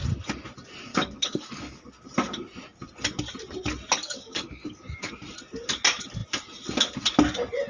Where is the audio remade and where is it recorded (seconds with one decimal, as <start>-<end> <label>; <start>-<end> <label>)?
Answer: 0.0-0.9 recorded; 0.9-1.8 remade; 1.8-4.0 recorded; 4.0-5.1 remade; 5.1-7.7 recorded